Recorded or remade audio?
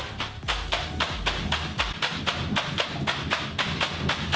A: recorded